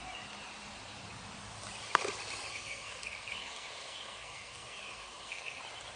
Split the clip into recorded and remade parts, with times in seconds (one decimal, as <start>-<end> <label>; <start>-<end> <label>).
0.0-2.5 recorded; 2.5-5.6 remade; 5.6-6.0 recorded